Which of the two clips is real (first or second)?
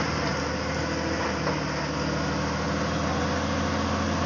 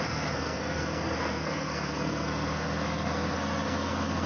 first